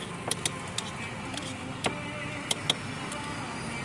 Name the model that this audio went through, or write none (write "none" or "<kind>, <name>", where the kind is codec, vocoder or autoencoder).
none